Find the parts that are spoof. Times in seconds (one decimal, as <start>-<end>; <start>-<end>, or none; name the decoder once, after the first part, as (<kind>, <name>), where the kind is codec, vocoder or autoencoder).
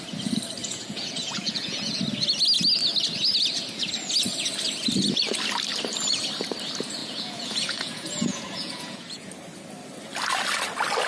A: 0.6-2.0 (vocoder, Vocos); 7.0-9.3